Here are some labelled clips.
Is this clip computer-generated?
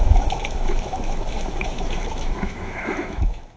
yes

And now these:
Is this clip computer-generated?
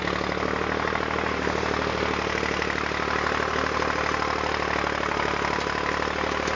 no